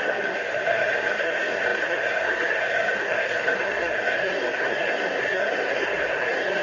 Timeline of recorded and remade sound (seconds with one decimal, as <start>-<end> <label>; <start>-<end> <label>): 0.0-6.6 remade